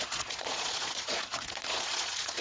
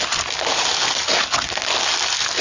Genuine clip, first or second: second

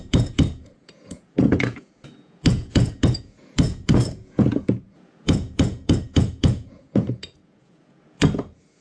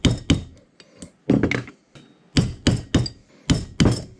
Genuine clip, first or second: second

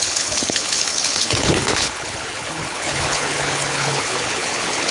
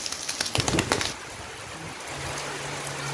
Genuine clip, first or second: second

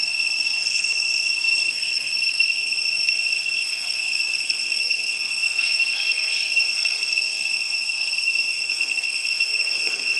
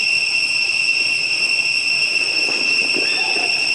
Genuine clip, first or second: second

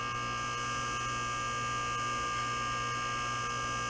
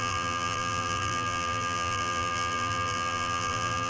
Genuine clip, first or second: first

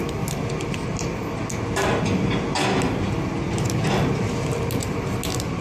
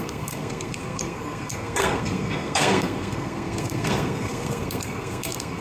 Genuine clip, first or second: first